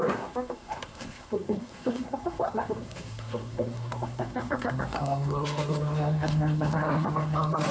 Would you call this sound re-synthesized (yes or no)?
yes